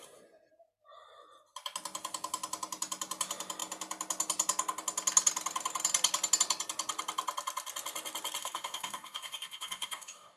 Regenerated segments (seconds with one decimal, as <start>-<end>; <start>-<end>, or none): 8.4-10.4